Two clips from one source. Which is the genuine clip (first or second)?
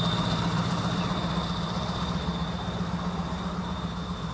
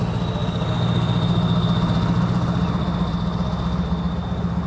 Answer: second